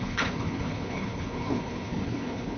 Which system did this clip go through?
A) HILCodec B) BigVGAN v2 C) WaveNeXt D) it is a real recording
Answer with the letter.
A